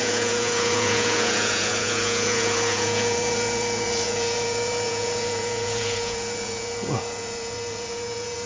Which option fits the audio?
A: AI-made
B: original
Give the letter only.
A